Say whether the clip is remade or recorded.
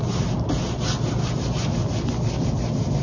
recorded